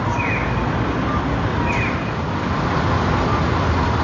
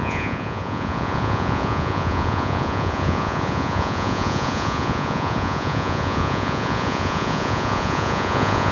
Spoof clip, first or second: second